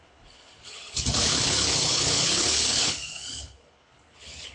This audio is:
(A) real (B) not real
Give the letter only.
B